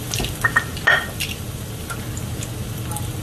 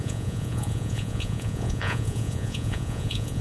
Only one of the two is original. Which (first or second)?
first